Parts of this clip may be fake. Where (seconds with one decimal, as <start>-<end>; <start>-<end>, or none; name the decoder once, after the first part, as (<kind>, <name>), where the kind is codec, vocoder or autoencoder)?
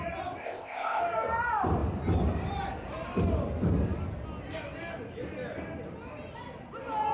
0.4-1.0 (codec, ZipCodec)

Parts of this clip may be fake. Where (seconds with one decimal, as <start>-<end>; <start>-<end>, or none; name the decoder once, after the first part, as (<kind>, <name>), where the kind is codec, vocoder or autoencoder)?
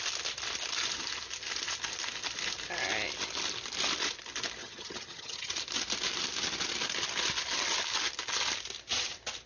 4.6-5.5 (vocoder, HiFi-GAN)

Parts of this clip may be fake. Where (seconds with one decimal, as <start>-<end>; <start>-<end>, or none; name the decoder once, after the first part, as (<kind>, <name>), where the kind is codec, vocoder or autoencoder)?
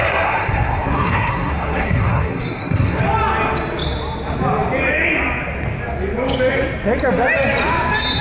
0.0-3.0 (codec, SNAC)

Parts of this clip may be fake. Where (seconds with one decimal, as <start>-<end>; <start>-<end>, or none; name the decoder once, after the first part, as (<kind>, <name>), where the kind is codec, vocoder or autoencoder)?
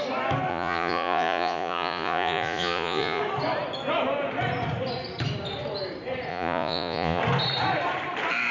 0.5-3.2 (vocoder, Vocos); 6.3-7.2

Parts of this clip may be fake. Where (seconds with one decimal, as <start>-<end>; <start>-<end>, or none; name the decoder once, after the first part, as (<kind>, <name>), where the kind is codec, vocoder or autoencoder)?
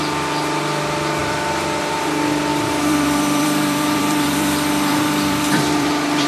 1.2-2.0 (vocoder, BigVGAN v2); 2.5-6.3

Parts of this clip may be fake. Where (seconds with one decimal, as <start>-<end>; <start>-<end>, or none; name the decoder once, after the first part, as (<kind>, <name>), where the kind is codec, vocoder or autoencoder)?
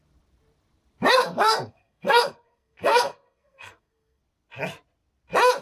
1.2-4.2 (codec, SNAC)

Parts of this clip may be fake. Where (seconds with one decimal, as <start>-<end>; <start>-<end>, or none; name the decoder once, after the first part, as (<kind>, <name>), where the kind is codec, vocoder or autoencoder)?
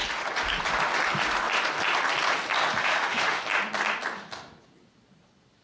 2.8-3.4 (autoencoder, DAC-VAE)